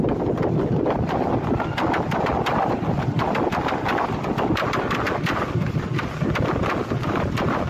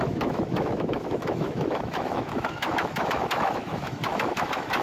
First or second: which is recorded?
first